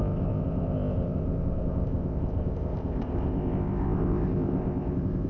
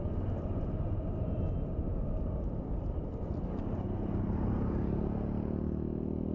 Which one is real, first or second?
second